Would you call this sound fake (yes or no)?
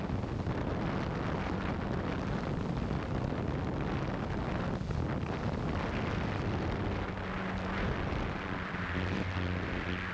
no